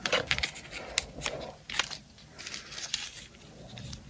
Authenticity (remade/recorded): recorded